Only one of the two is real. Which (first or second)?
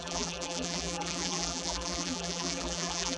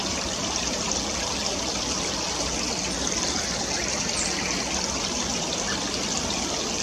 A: second